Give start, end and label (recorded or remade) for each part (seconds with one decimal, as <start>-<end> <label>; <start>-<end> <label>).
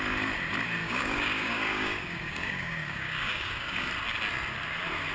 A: 0.0-0.8 recorded; 0.8-3.9 remade; 3.9-5.1 recorded